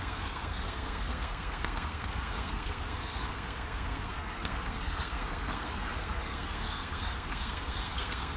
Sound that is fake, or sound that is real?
fake